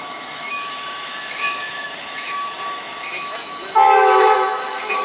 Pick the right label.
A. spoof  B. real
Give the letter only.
A